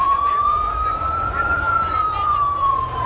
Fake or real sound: fake